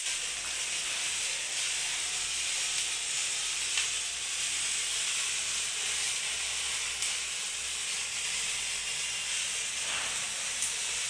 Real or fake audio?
real